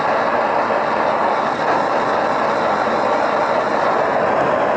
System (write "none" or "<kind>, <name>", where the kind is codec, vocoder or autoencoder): none